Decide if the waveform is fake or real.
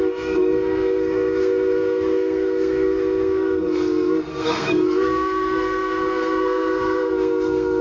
fake